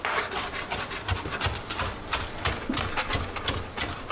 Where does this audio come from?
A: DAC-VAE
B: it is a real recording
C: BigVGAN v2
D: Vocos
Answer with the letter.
B